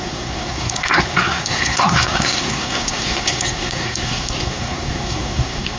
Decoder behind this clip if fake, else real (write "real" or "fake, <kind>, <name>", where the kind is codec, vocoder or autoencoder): fake, codec, SNAC